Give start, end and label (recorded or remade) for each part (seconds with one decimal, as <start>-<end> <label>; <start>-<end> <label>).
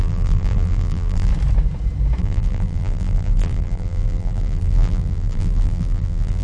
0.0-1.3 remade; 1.3-2.2 recorded; 2.2-6.4 remade